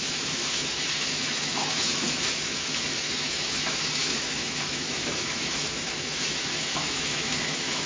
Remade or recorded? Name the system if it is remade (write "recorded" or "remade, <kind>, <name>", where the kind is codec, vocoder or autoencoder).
remade, autoencoder, DAC-VAE